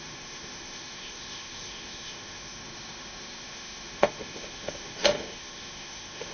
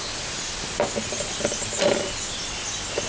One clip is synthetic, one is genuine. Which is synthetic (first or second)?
first